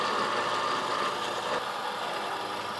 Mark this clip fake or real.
real